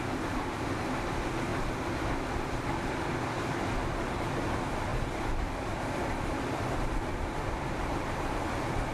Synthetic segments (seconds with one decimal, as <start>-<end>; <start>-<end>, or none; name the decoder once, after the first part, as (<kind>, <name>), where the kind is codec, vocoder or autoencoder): 0.0-1.5 (vocoder, BigVGAN v2); 4.0-4.9; 7.1-8.9